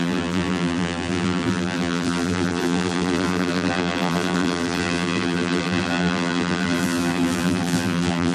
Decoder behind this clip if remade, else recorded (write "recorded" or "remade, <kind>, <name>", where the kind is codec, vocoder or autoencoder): remade, vocoder, BigVGAN v2